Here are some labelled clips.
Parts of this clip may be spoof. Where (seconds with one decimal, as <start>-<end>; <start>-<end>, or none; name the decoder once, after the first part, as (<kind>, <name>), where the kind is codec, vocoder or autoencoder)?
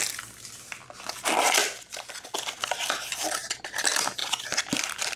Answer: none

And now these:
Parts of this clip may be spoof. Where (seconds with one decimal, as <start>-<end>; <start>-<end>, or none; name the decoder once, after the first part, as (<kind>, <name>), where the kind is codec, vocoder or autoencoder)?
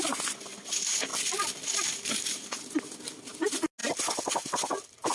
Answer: none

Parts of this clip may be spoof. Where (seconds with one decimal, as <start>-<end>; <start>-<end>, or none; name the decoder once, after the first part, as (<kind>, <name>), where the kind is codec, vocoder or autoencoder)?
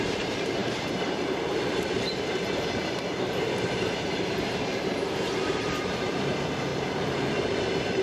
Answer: 0.0-8.0 (vocoder, BigVGAN v2)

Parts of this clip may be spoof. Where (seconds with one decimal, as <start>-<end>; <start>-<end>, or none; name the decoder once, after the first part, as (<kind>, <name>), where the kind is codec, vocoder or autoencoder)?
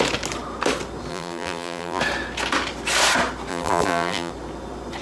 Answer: 1.1-2.0 (vocoder, BigVGAN v2); 3.5-4.3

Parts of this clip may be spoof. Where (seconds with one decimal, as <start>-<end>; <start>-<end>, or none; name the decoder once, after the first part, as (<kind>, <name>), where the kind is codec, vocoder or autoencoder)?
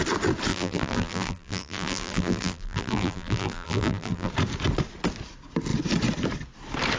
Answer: 0.5-4.3 (vocoder, BigVGAN v2)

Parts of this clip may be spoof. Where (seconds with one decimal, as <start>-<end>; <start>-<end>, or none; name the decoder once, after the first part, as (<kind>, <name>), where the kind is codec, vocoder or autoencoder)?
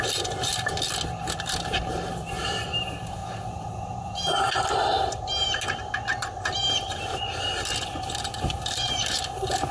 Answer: 0.0-0.5 (vocoder, BigVGAN v2); 2.1-3.2; 7.8-9.7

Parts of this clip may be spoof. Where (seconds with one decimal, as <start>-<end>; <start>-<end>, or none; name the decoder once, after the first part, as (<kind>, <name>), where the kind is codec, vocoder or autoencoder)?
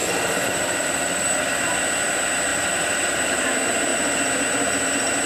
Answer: 0.0-1.8 (vocoder, BigVGAN v2); 2.5-3.5